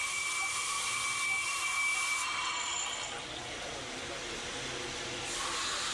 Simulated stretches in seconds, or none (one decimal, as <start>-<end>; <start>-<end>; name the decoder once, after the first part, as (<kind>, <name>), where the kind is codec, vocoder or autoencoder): none